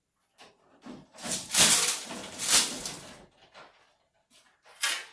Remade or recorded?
recorded